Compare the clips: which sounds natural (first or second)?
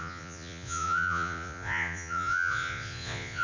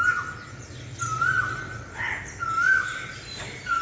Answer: second